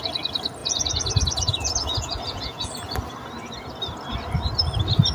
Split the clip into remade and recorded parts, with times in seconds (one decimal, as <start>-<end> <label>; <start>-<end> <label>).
0.0-0.6 recorded; 0.6-2.7 remade; 2.7-5.1 recorded